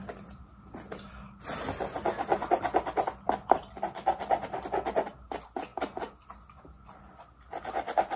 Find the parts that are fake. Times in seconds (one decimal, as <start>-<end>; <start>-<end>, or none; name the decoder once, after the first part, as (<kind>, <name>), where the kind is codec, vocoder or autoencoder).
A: none